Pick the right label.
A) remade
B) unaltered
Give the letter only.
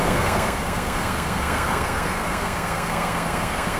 A